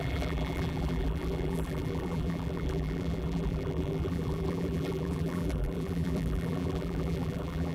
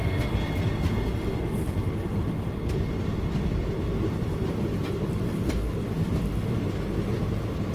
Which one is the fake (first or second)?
first